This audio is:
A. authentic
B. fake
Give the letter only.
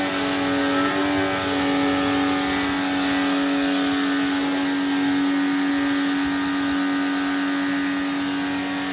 A